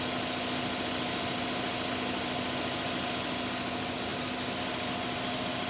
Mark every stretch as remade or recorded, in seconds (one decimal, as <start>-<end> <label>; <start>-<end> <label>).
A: 0.0-5.7 recorded